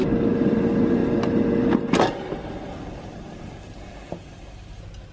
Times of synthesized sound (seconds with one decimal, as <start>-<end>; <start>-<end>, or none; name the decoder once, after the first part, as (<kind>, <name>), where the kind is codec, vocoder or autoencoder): none